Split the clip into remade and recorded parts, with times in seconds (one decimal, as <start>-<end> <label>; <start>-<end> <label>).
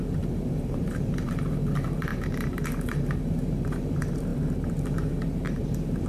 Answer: 0.0-6.1 remade